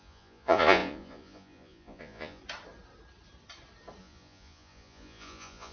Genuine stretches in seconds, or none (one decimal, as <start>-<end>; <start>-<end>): 2.4-4.0